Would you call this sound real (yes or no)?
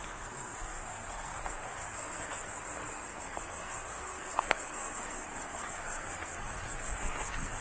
no